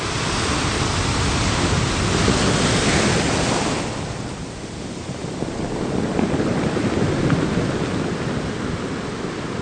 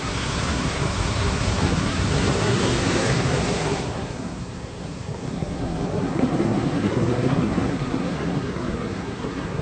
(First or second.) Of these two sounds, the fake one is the second